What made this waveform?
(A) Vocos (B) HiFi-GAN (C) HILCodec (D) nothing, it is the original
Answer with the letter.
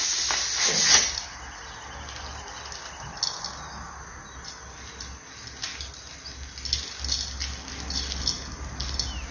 D